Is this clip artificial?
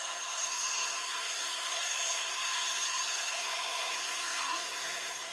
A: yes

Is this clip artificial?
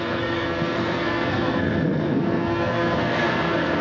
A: yes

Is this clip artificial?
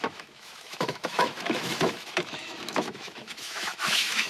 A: yes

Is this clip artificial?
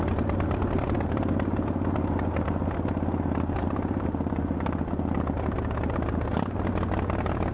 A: no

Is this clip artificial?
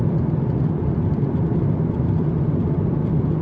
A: no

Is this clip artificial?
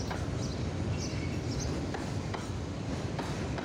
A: no